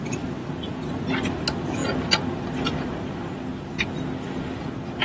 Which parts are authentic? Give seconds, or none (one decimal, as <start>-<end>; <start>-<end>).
0.0-5.0